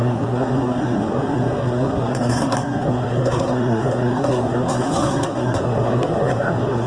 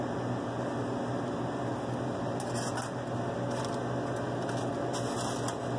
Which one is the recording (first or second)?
second